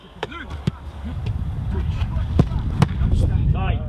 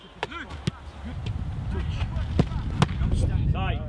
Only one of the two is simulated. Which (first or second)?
first